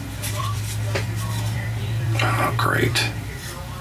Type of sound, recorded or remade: remade